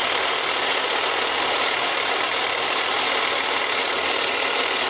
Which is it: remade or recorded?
recorded